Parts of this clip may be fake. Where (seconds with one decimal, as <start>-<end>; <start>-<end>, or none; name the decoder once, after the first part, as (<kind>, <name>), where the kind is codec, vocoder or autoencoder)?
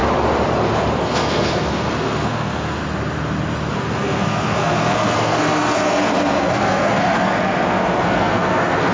1.0-2.8 (codec, SNAC); 3.7-8.9